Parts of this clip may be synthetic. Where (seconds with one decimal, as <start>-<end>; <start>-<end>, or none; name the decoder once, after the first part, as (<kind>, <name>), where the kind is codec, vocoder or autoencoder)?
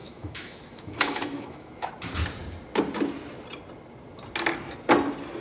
0.0-1.9 (autoencoder, DAC-VAE)